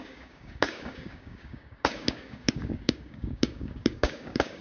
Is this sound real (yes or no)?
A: no